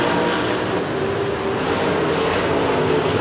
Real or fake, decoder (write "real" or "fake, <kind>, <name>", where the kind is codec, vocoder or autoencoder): real